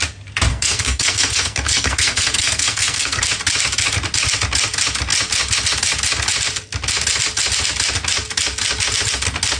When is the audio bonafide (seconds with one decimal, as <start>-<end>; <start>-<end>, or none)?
0.0-0.5; 3.2-9.6

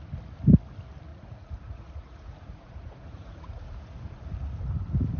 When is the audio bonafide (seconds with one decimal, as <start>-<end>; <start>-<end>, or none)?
0.0-1.1; 4.2-5.2

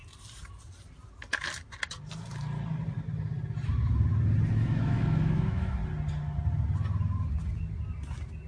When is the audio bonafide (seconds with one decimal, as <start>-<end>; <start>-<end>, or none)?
0.0-4.5; 5.8-8.5

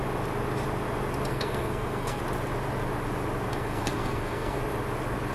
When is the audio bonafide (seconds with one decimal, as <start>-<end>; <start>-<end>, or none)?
0.0-1.3; 2.2-3.5; 4.6-5.3